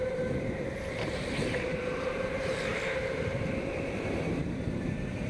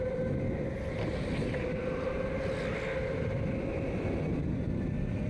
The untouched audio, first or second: second